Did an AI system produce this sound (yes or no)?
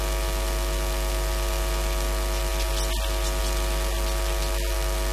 no